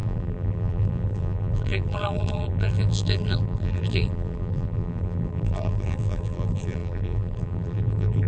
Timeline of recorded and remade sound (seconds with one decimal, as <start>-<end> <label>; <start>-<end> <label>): 0.0-8.3 remade